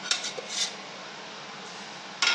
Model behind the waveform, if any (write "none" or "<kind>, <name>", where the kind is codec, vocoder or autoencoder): none